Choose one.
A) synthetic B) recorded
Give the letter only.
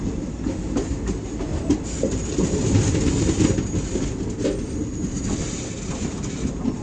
B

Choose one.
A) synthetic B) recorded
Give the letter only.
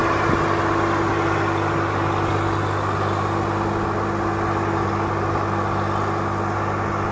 B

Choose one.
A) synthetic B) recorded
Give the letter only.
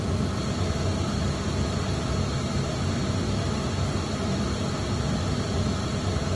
B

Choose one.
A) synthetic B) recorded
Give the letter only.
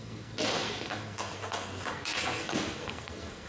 A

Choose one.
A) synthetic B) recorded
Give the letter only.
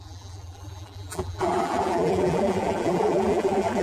A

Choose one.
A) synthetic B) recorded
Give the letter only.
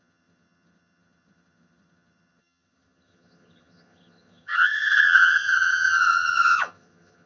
A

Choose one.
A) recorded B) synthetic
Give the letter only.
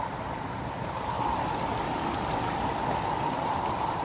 A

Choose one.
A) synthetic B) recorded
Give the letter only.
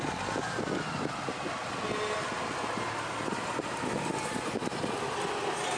B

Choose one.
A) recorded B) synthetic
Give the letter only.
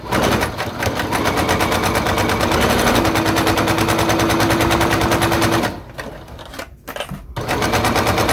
A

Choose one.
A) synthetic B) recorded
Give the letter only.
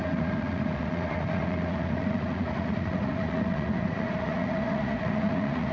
A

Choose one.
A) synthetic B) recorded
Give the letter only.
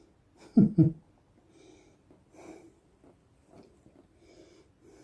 B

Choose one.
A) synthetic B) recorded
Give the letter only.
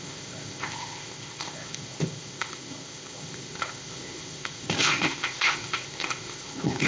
A